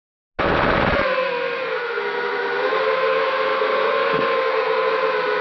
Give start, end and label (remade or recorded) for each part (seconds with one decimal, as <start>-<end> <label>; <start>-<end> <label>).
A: 0.0-1.7 recorded; 1.7-4.9 remade; 4.9-5.4 recorded